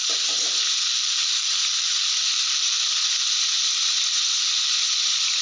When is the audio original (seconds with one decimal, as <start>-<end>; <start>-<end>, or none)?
2.9-5.4